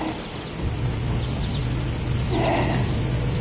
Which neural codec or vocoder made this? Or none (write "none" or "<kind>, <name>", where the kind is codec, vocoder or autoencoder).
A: none